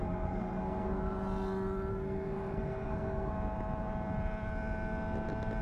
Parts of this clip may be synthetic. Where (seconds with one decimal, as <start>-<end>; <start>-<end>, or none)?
0.0-1.0; 1.9-3.3